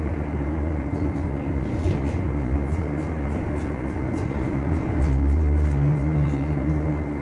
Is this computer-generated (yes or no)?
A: yes